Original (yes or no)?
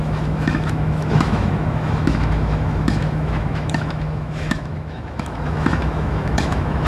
no